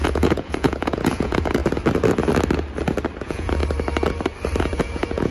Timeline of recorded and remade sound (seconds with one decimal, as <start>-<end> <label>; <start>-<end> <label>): 0.0-1.6 remade; 1.6-3.2 recorded; 3.2-3.6 remade; 3.6-4.6 recorded; 4.6-5.3 remade